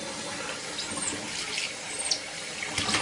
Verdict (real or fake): real